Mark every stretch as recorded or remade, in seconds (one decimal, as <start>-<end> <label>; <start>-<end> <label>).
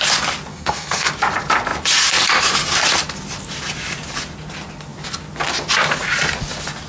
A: 0.0-0.5 recorded; 0.5-1.1 remade; 1.1-6.9 recorded